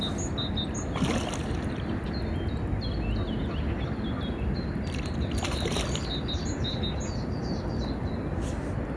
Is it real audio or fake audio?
real